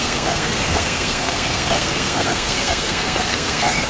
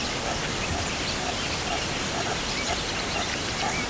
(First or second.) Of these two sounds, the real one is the second